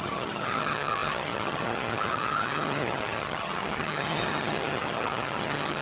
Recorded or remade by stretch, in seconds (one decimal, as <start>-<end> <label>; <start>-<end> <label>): 0.0-5.8 remade